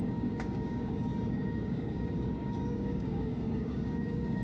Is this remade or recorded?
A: remade